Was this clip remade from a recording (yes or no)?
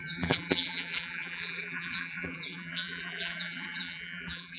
yes